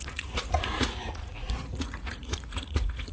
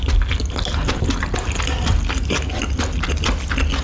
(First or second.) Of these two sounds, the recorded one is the second